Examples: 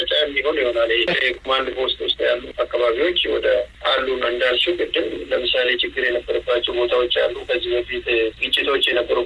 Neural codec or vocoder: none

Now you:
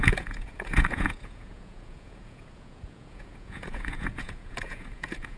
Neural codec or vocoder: vocoder, Vocos